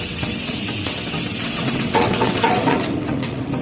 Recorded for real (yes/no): no